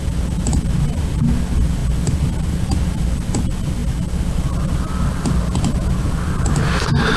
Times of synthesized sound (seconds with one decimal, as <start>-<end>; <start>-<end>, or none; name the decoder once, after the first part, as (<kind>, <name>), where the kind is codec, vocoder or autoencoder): none

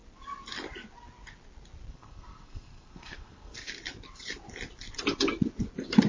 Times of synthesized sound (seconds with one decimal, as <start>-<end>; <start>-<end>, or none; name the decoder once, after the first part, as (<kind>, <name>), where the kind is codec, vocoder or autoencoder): 1.9-3.7 (codec, SNAC)

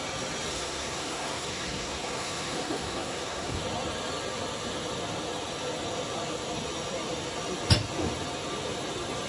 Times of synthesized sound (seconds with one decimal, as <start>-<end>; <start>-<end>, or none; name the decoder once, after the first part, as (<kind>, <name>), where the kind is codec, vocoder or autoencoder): 0.5-3.6 (codec, SNAC)

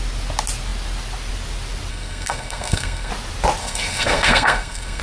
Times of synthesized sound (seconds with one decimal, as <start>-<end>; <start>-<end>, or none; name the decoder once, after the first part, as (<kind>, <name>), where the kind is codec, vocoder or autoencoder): 1.9-3.1 (codec, SNAC); 3.6-5.0

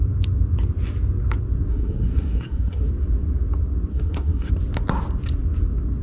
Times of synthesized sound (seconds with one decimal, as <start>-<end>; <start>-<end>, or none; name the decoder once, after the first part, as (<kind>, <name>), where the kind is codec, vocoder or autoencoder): 1.7-2.9 (codec, SNAC); 3.9-4.5

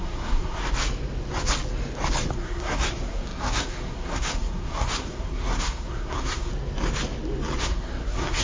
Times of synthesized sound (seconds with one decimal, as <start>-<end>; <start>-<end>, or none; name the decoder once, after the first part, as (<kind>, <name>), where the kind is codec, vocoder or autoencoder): 0.0-0.6 (codec, SNAC); 2.3-6.5; 7.6-8.4

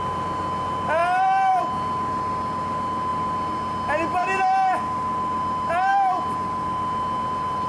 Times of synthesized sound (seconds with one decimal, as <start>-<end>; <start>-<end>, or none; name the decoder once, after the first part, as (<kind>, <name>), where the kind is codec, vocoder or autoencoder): none

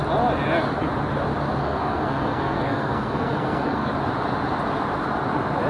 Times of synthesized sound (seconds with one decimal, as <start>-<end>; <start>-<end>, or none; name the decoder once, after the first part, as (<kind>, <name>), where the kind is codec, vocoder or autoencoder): 1.6-3.9 (codec, SNAC)